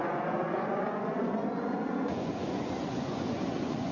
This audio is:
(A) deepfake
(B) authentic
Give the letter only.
A